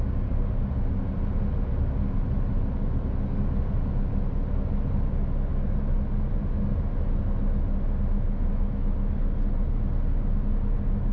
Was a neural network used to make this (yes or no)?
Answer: no